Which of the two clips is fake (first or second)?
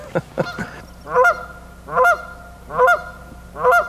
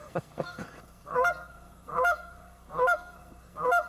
second